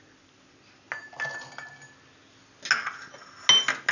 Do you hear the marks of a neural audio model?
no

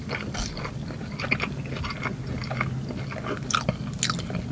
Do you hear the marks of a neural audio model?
no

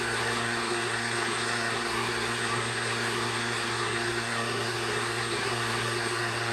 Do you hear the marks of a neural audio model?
yes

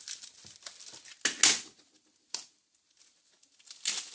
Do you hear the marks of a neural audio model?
no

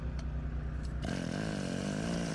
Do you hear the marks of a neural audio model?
no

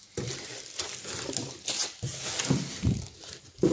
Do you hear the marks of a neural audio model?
no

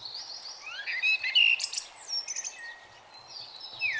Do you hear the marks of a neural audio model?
no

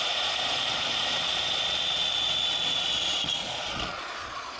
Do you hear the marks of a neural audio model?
yes